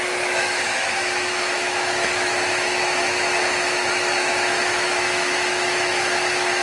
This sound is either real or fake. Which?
fake